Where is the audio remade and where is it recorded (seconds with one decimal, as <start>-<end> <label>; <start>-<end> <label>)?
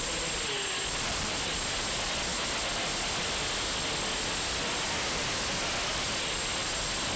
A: 0.0-7.2 recorded